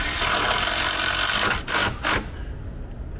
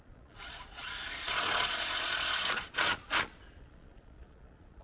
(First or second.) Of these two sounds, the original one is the first